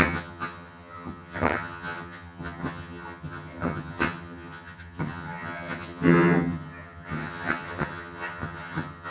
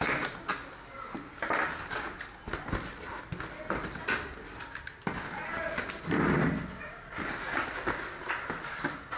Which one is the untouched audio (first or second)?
second